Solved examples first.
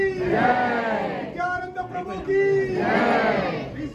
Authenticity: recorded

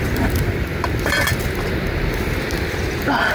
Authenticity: recorded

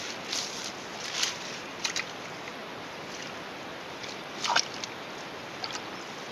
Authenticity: recorded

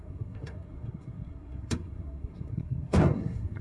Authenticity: remade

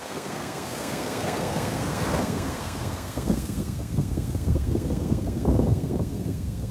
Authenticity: remade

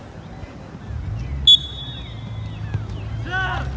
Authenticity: recorded